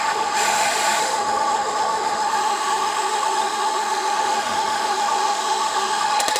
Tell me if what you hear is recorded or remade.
remade